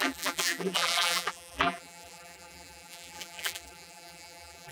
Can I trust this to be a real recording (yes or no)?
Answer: no